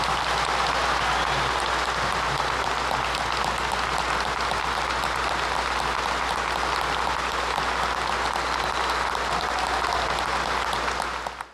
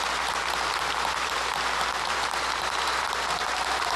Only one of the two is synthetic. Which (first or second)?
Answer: second